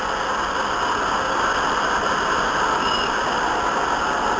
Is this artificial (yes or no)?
no